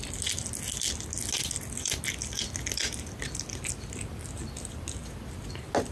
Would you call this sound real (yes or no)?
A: yes